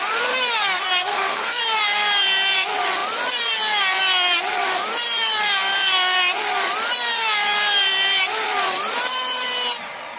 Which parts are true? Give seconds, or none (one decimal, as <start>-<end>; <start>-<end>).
0.0-1.0; 1.6-10.2